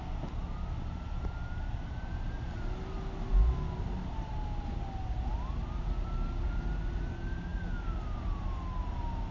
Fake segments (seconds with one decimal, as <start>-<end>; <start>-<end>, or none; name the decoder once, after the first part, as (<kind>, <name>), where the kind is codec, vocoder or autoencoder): none